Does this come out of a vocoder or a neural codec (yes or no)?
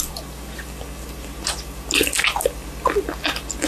no